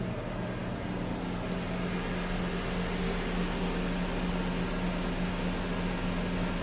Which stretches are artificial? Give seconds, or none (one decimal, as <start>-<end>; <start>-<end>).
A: none

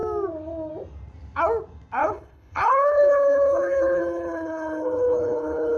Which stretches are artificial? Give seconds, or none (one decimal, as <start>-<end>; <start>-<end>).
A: 2.0-5.8

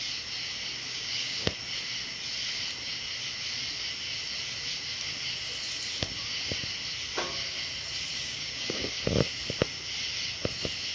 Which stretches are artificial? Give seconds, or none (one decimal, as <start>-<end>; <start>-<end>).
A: 0.9-1.5; 8.1-9.0

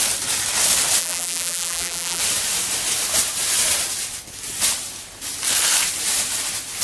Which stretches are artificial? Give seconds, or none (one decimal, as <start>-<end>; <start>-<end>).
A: 1.0-2.2